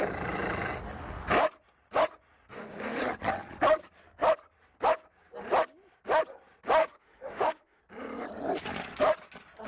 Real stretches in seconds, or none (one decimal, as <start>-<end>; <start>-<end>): 0.0-2.5; 3.0-6.8; 7.8-9.7